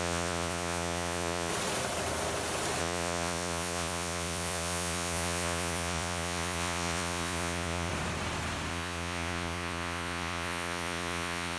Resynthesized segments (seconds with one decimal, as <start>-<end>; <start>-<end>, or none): 0.0-1.5; 2.8-7.9; 8.7-11.6